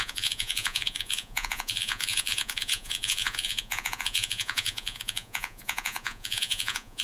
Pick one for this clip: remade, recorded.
remade